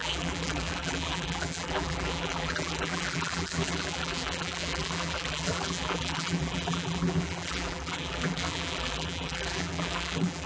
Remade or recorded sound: remade